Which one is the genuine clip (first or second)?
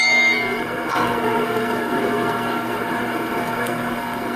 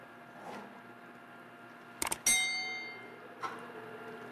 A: second